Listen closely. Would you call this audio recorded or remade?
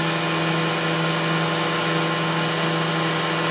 recorded